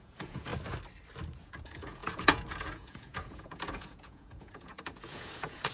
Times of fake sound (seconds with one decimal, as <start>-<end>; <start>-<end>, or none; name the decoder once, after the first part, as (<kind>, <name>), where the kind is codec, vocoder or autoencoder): 0.0-0.5 (vocoder, Vocos); 1.4-5.7